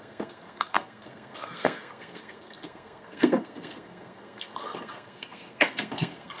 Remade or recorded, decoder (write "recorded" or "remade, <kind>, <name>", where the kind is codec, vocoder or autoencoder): remade, codec, SNAC